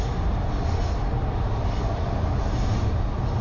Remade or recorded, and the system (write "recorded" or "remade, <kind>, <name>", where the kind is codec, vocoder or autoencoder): recorded